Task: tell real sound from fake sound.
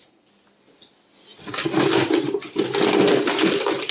real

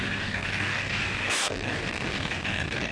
fake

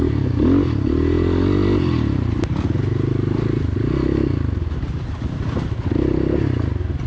real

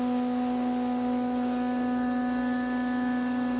fake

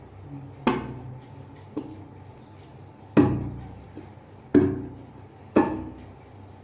real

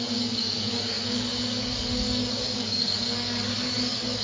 fake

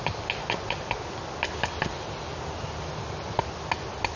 real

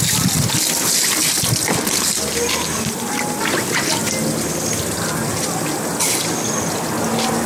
real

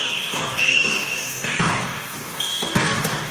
fake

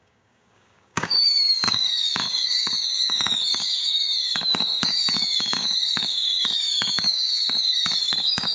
fake